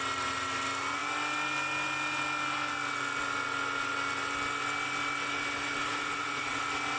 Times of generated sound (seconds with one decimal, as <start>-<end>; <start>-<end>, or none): 5.8-6.6